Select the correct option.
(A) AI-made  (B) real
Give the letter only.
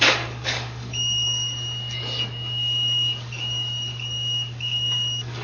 A